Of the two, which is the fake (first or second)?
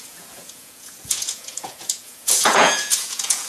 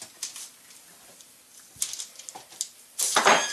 first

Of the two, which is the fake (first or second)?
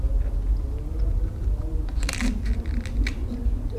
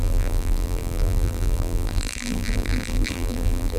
second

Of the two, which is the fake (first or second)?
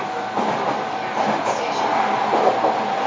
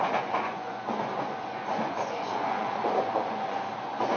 second